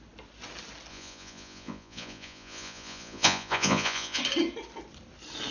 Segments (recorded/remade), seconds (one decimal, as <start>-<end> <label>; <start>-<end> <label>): 0.0-0.9 recorded; 0.9-4.2 remade; 4.2-5.5 recorded